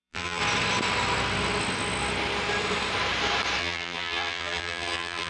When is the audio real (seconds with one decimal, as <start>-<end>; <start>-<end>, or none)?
0.4-3.6